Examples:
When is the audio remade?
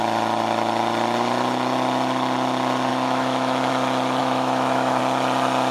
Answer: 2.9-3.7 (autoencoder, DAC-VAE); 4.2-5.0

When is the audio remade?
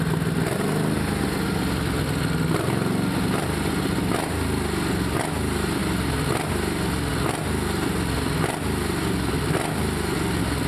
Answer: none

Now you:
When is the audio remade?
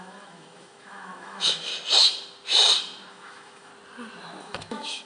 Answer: 0.0-1.7 (autoencoder, DAC-VAE); 3.1-3.7; 4.4-5.1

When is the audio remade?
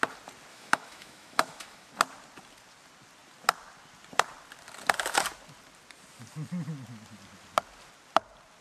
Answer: 0.5-1.9 (autoencoder, DAC-VAE)